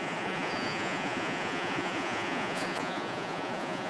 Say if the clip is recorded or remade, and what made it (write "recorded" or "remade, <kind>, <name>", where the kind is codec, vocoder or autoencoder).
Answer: remade, vocoder, Vocos